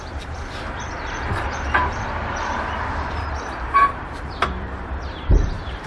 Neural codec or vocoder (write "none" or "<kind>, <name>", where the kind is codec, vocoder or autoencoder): vocoder, BigVGAN v2